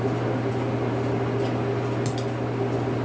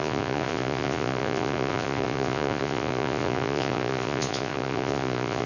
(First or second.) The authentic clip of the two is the first